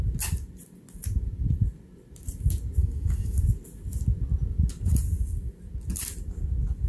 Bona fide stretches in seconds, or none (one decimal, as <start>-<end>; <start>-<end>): 0.0-2.8; 3.4-6.9